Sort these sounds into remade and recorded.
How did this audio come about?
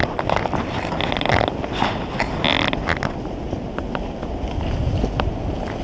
recorded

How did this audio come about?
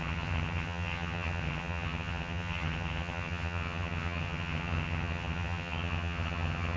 remade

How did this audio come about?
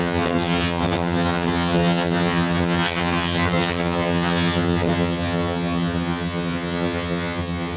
remade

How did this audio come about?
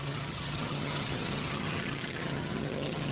remade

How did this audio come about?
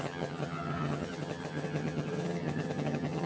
remade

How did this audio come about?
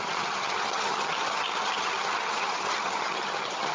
remade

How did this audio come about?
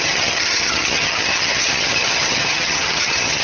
remade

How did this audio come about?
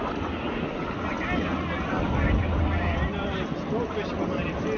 recorded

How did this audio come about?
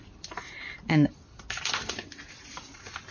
recorded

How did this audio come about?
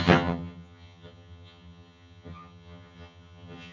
remade